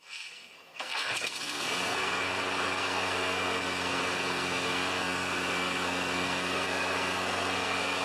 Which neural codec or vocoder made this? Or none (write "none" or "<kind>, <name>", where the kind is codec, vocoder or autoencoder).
codec, SNAC